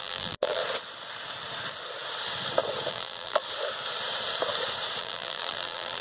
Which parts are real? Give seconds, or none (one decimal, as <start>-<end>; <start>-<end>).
0.6-2.9; 3.4-5.0